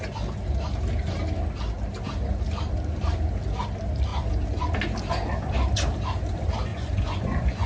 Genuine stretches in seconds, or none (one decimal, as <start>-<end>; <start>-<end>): 0.0-6.7